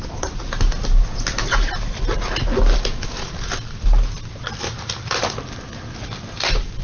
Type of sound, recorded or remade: recorded